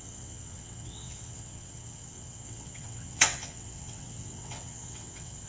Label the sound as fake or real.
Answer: fake